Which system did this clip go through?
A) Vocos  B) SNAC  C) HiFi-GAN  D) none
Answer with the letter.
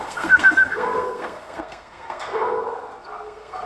B